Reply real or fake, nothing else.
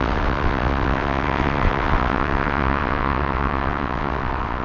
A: fake